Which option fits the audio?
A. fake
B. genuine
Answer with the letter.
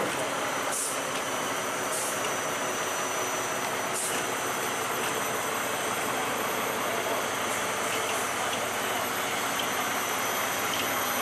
B